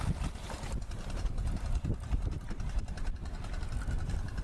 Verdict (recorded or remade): recorded